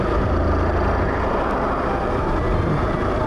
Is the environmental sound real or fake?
real